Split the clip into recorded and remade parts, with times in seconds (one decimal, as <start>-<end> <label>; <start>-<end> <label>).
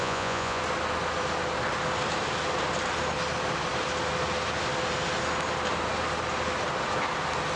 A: 0.0-0.6 remade; 0.6-7.6 recorded